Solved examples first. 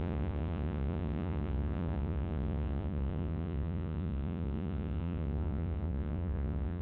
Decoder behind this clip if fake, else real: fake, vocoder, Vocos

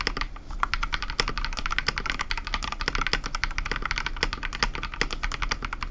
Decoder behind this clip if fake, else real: real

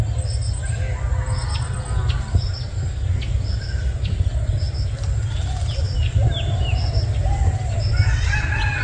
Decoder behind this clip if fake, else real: real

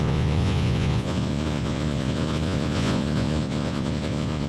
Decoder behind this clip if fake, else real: fake, vocoder, Vocos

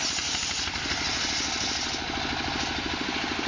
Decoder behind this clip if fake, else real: real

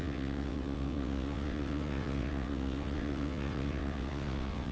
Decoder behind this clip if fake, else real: fake, vocoder, WaveNeXt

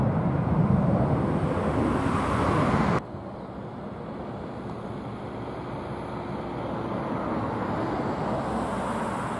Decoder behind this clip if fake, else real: real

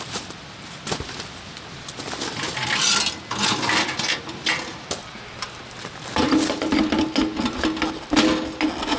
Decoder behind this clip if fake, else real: real